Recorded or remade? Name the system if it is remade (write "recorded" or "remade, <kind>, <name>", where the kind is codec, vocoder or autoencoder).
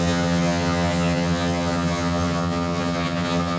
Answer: remade, vocoder, HiFi-GAN